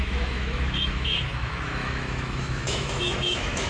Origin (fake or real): fake